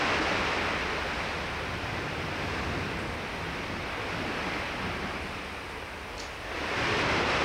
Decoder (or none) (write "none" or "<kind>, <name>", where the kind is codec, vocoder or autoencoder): none